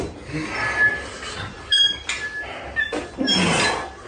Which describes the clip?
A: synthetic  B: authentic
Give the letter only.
B